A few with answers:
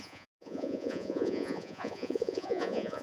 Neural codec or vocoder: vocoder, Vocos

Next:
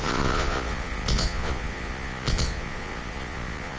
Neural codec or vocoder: vocoder, Vocos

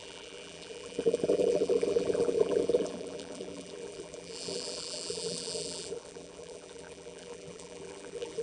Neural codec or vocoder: vocoder, BigVGAN v2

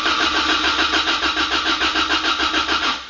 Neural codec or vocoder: none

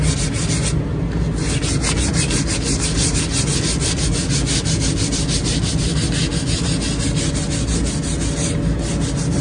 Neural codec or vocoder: none